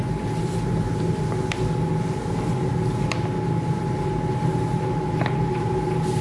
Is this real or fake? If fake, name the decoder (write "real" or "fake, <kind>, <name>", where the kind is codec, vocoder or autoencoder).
real